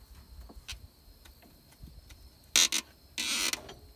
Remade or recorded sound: recorded